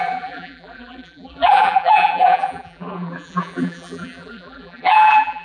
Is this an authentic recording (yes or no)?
no